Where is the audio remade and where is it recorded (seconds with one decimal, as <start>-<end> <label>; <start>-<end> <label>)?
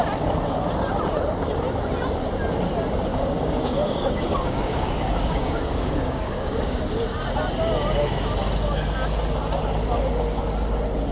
0.0-3.1 recorded; 3.1-6.8 remade; 6.8-11.1 recorded